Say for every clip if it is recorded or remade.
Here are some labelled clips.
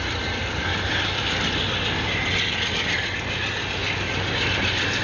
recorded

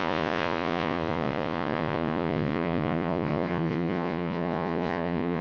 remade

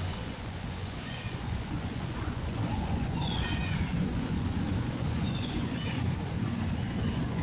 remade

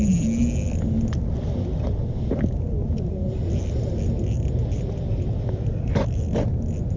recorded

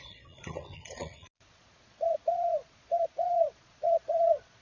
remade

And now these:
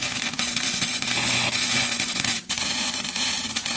remade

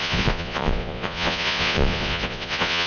remade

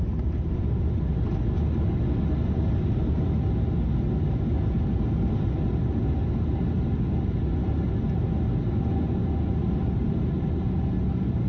recorded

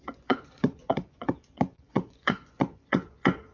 remade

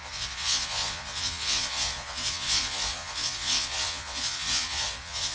remade